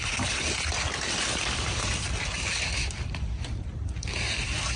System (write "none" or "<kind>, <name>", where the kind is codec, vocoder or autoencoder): none